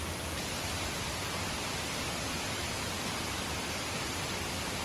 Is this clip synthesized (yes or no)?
no